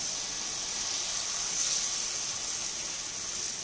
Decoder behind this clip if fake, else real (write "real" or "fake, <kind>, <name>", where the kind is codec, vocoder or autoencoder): real